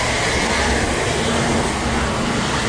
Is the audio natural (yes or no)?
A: yes